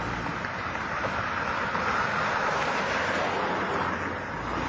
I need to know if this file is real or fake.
real